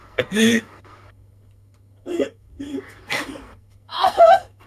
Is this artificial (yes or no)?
yes